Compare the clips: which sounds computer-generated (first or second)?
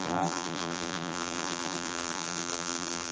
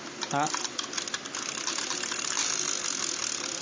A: first